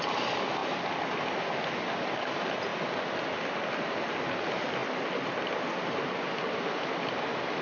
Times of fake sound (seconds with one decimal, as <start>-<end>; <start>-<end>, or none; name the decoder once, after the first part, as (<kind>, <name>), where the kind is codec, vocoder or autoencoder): none